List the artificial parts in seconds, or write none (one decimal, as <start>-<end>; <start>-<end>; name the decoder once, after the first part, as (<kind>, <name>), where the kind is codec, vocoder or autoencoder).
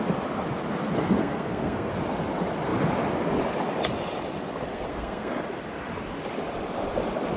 1.2-1.9 (codec, SNAC); 4.7-5.4